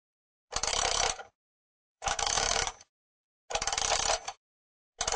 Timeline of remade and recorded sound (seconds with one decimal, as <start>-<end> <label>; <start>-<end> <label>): 0.0-1.6 recorded; 1.6-2.7 remade; 2.7-5.2 recorded